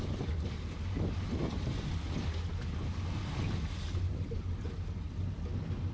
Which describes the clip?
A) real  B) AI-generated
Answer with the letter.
A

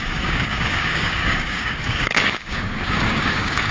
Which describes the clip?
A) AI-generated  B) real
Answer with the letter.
A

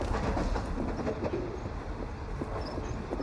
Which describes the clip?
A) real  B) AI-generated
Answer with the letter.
A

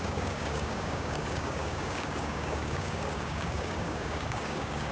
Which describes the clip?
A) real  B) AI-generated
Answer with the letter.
B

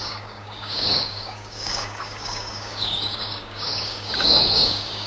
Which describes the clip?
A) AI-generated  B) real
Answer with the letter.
A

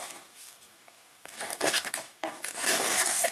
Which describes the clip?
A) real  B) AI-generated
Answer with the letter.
B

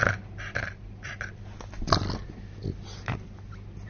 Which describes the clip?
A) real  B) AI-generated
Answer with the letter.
A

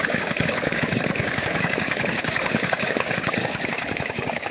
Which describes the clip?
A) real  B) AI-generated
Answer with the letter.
B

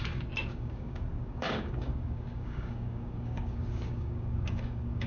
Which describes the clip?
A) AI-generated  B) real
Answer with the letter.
A